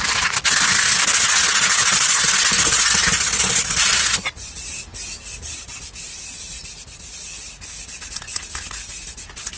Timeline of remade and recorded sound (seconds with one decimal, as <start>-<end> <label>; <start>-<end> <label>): 0.0-9.6 recorded